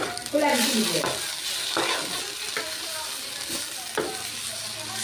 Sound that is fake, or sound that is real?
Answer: real